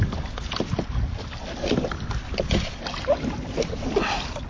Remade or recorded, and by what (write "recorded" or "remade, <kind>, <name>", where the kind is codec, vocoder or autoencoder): recorded